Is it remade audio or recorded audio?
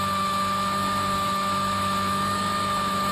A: remade